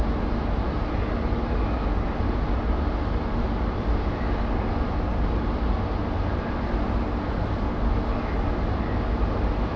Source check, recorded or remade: recorded